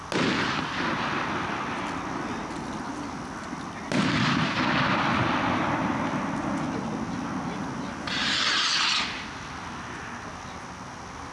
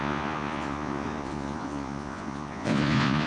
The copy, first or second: second